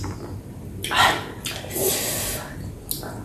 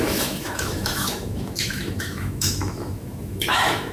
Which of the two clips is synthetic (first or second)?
second